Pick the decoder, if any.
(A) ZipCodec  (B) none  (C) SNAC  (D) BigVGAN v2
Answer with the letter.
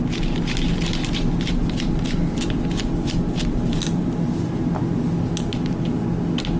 B